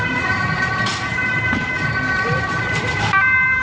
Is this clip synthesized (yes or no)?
yes